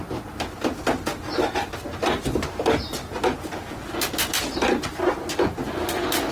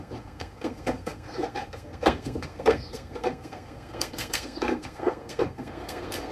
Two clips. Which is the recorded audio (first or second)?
first